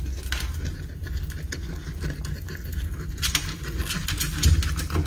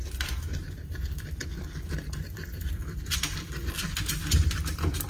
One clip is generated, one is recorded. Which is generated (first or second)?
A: second